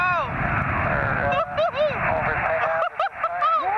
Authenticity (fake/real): real